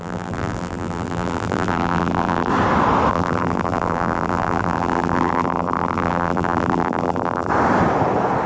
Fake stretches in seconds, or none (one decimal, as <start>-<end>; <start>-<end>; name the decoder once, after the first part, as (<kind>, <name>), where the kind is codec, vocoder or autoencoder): 0.0-2.5 (vocoder, BigVGAN v2); 3.1-7.5